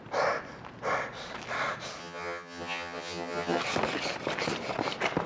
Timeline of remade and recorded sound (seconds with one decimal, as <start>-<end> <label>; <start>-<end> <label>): 0.0-2.0 recorded; 2.0-3.6 remade; 3.6-5.3 recorded